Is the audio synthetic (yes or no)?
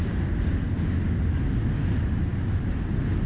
no